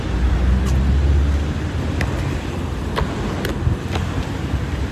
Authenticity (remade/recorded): recorded